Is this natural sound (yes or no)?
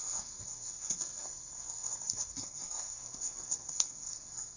no